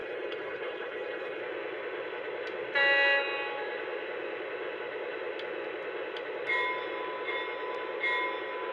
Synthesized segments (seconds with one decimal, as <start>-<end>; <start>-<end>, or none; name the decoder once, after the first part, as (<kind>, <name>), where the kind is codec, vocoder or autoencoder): 0.0-1.4 (codec, HILCodec)